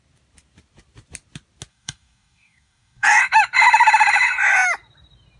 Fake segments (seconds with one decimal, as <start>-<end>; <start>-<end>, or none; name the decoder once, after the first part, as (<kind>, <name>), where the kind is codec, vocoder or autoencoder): 1.7-3.2 (codec, DAC)